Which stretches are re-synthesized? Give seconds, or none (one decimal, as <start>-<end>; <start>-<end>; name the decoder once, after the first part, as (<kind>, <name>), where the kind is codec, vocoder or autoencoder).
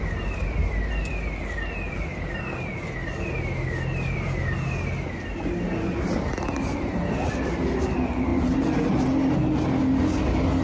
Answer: none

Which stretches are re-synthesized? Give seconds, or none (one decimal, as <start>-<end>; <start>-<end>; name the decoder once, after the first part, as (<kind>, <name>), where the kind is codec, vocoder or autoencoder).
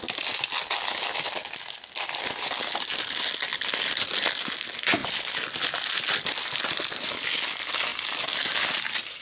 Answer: 3.5-4.3 (vocoder, BigVGAN v2); 5.0-6.6